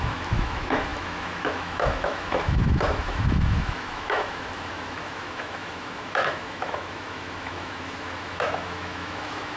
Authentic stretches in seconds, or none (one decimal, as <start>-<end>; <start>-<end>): none